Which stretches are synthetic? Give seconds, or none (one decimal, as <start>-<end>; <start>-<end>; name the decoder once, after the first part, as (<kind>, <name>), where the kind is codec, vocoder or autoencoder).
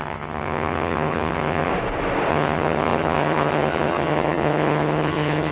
0.0-1.7 (vocoder, HiFi-GAN); 2.3-5.5